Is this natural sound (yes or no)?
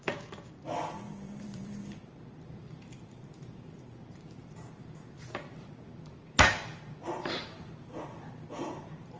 no